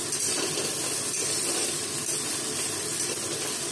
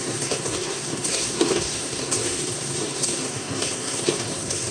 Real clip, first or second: first